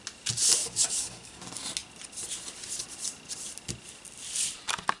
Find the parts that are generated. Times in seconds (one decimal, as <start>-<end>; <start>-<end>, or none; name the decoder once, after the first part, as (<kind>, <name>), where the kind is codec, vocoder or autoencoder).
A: 0.6-1.4 (codec, DAC)